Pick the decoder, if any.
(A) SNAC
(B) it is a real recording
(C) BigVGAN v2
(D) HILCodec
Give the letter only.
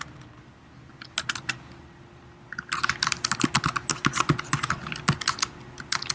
B